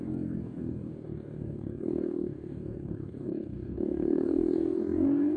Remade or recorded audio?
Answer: remade